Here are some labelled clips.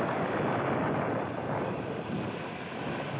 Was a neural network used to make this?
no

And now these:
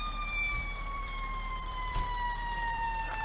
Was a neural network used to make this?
yes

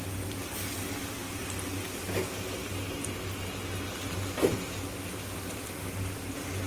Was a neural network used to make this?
no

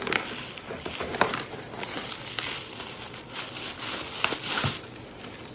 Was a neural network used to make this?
no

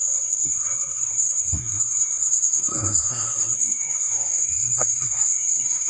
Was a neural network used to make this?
yes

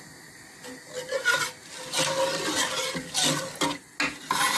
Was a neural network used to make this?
no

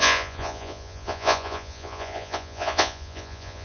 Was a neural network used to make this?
yes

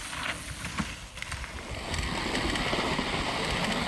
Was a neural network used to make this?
no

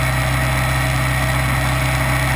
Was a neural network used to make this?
no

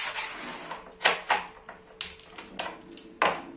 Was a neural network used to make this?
no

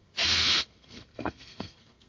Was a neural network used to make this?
yes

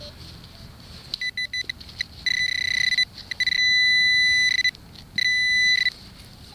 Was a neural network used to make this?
no